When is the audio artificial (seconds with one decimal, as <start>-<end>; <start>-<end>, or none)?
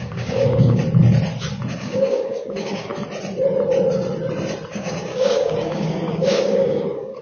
0.0-0.8; 1.8-2.9; 4.7-7.2